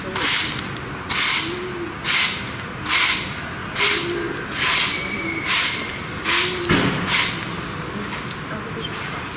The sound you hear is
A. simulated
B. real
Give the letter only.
B